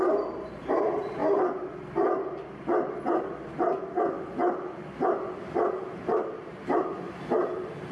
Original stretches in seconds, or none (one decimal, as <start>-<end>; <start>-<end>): 1.2-5.9